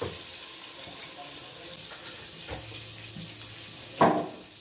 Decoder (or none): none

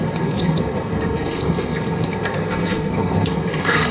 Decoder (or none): codec, SNAC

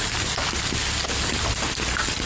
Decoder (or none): none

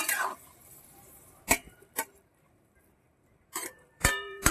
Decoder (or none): vocoder, BigVGAN v2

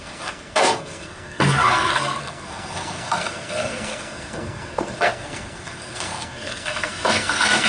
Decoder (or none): codec, SNAC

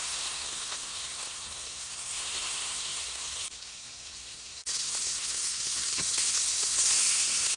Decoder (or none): codec, SNAC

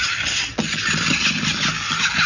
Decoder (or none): none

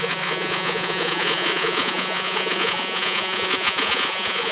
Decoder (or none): vocoder, Vocos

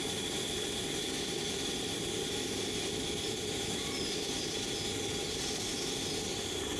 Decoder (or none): none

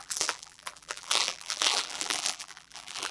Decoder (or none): vocoder, BigVGAN v2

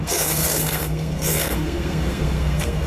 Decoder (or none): codec, SNAC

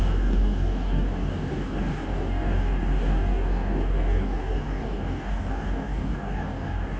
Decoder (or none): codec, DAC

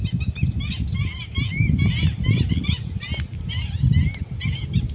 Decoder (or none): none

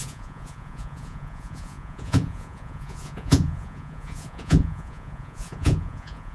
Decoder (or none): vocoder, Vocos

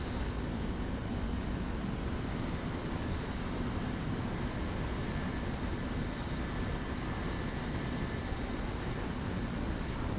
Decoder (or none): none